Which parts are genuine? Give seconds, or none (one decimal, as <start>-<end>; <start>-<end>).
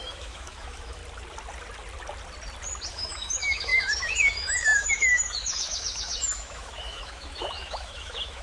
1.0-2.9